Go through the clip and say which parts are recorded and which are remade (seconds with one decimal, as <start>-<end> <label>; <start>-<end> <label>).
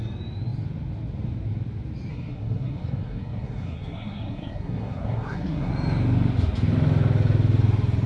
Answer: 0.0-2.1 recorded; 2.1-5.7 remade; 5.7-8.1 recorded